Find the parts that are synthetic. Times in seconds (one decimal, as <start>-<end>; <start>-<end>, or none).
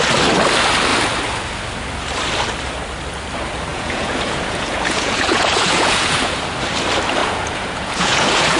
3.7-6.4; 7.2-8.6